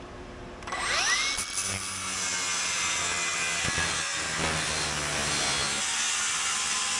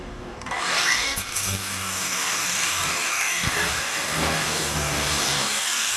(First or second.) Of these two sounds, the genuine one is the first